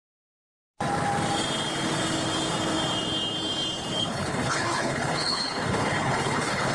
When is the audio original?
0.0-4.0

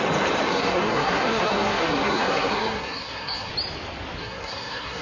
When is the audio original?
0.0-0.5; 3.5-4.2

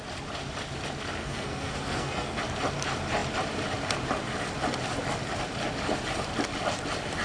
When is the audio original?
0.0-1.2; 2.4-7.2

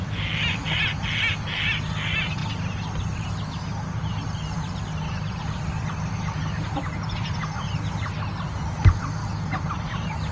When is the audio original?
0.0-10.3

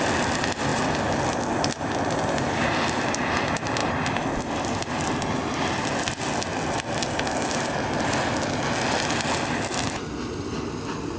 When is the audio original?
0.0-11.2

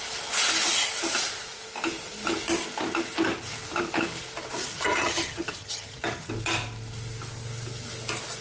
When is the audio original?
0.0-4.7; 6.3-8.4